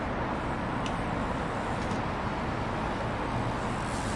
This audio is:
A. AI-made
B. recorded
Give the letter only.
B